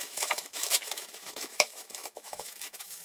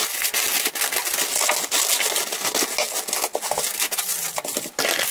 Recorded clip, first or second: second